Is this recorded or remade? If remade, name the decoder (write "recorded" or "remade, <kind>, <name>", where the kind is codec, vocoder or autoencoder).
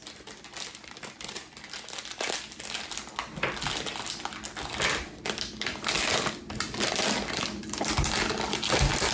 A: recorded